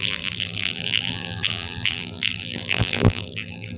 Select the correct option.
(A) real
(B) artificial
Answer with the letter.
B